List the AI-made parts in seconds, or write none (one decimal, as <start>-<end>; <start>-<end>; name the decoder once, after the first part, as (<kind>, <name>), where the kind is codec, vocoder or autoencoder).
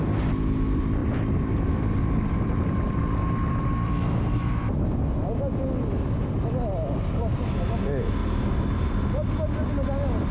1.0-3.0 (vocoder, BigVGAN v2); 8.2-8.9